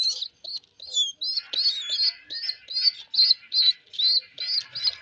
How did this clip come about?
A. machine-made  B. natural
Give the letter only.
B